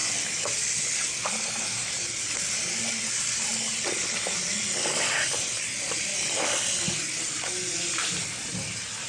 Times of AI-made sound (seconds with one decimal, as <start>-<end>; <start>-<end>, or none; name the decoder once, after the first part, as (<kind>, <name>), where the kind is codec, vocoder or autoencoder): none